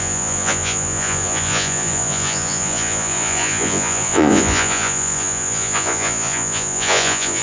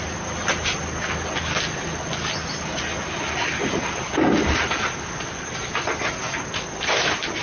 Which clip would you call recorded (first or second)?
second